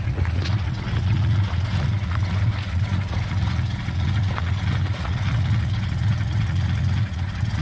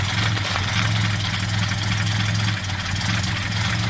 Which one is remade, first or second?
first